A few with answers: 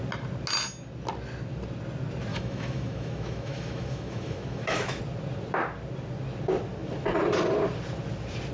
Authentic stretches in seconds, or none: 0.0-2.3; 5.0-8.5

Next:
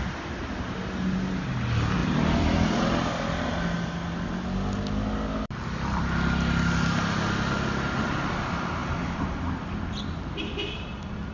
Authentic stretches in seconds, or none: 0.0-11.3

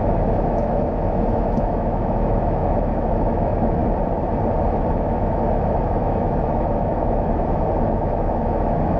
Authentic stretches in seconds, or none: 3.8-4.9

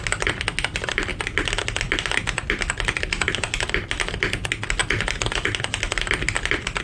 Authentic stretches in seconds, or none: 0.0-6.8

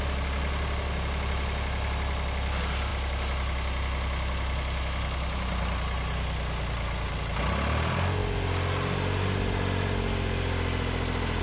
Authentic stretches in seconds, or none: 0.0-11.4

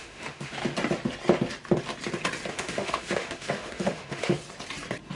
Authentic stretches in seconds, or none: 0.6-2.5; 4.4-5.2

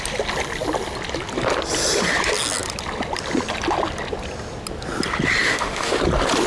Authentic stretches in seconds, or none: 0.0-5.4; 6.0-6.5